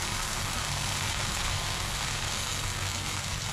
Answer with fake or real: fake